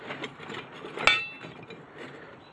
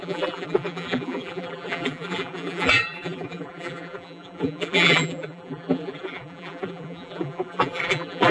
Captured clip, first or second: first